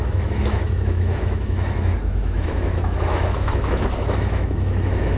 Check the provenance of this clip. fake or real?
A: fake